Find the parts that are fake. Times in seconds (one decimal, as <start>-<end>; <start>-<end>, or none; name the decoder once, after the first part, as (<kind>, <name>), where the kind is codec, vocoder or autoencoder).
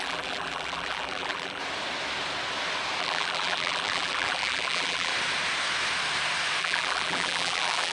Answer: 0.0-1.6 (vocoder, BigVGAN v2); 3.0-5.1; 6.6-7.9